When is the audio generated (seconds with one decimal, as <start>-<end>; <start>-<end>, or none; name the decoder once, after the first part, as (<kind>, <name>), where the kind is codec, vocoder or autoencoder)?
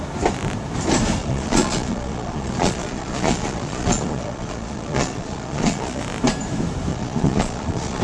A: 1.2-6.0 (vocoder, Vocos); 6.9-8.0